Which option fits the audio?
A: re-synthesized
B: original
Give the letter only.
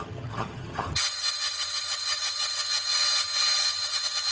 A